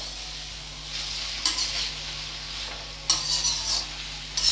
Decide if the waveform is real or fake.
real